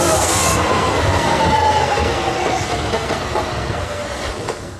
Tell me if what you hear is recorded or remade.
remade